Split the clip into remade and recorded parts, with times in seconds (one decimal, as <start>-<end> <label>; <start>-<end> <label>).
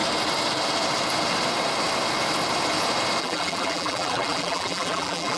0.0-3.2 recorded; 3.2-5.4 remade